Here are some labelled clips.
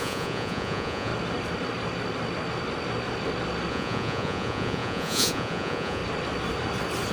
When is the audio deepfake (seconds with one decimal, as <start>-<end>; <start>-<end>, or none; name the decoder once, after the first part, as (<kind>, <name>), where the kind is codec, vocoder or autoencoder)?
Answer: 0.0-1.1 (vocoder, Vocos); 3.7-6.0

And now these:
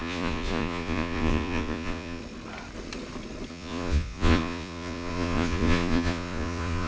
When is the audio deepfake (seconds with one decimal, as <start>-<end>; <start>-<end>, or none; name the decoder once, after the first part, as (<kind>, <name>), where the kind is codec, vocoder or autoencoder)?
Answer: 0.0-2.2 (vocoder, Vocos); 3.5-6.9

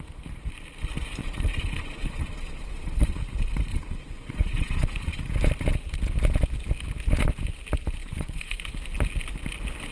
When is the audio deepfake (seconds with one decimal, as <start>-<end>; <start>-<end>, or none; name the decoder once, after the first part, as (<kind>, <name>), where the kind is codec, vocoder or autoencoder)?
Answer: 1.2-3.2 (vocoder, Vocos); 3.7-5.2; 8.0-8.7

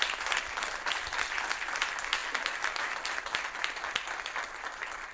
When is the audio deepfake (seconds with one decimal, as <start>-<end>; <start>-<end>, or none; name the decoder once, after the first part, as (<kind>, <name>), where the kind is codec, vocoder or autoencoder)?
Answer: none

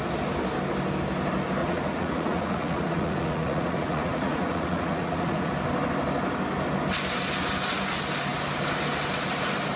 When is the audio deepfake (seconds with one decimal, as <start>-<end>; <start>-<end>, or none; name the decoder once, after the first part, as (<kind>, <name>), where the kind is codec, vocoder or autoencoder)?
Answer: 1.6-5.5 (vocoder, Vocos)

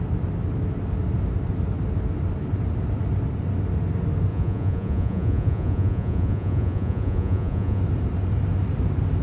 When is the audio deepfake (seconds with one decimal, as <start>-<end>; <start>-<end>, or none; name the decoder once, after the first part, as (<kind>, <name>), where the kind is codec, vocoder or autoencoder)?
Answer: 4.3-7.8 (vocoder, Vocos)

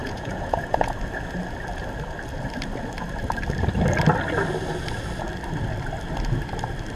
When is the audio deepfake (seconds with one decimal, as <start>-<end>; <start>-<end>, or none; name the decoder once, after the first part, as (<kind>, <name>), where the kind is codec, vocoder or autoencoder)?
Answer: 0.0-0.9 (vocoder, Vocos)